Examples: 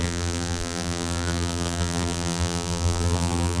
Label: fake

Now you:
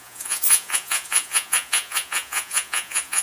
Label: fake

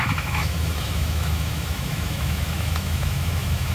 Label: fake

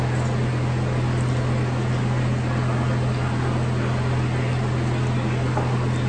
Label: real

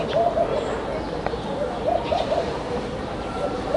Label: real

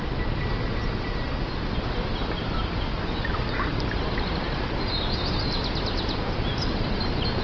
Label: real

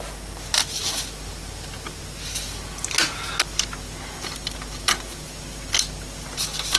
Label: real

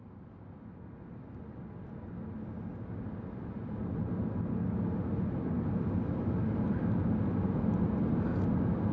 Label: real